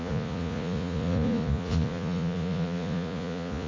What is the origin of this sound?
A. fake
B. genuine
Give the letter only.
A